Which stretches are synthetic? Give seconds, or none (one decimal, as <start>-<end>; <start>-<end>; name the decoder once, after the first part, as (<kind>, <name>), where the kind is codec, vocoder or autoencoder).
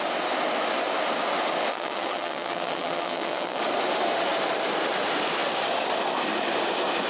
1.7-3.6 (vocoder, WaveNeXt)